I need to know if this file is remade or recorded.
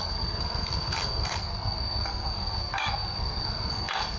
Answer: remade